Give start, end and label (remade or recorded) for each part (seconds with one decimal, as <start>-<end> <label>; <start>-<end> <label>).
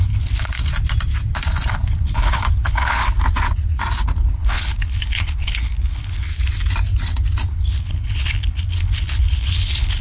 0.0-0.6 remade; 0.6-1.7 recorded; 1.7-3.0 remade; 3.0-4.3 recorded; 4.3-6.3 remade; 6.3-7.5 recorded; 7.5-10.0 remade